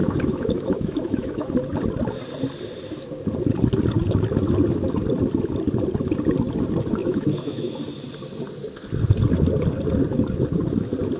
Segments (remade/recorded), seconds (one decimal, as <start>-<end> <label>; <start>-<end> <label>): 0.0-1.5 remade; 1.5-7.0 recorded; 7.0-7.8 remade; 7.8-11.2 recorded